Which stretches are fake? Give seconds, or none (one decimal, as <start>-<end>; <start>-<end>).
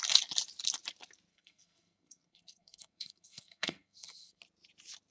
1.3-4.4